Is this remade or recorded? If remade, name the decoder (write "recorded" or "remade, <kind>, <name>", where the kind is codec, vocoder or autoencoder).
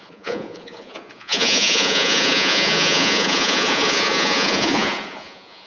remade, vocoder, Vocos